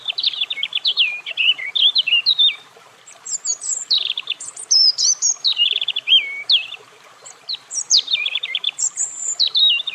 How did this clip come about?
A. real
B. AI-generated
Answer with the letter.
B